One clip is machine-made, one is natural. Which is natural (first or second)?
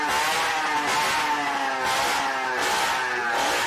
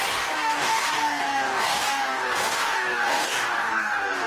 first